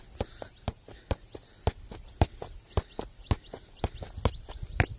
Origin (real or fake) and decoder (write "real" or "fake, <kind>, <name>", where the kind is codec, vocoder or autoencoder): real